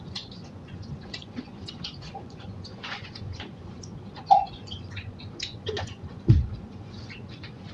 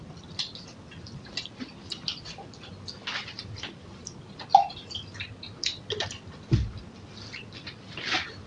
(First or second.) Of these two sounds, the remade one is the first